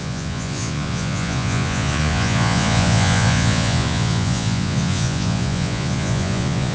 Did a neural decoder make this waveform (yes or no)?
yes